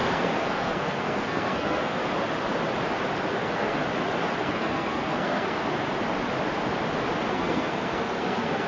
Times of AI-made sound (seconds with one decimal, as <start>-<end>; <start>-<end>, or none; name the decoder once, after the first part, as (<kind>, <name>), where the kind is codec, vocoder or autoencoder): 0.0-2.0 (codec, SNAC); 3.3-3.8; 4.4-5.6; 7.3-8.7